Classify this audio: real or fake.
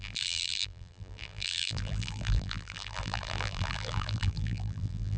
fake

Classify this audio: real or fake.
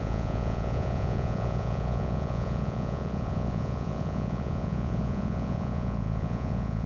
fake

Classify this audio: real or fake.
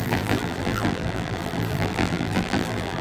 fake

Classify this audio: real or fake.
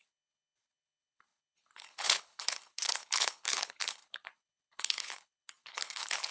fake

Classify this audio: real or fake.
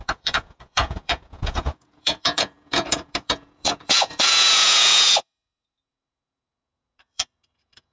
fake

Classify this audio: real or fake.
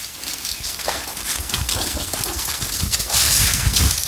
fake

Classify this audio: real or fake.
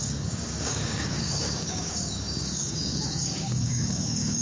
fake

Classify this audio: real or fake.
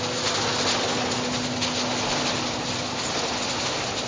real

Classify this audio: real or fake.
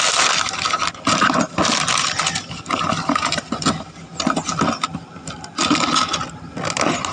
real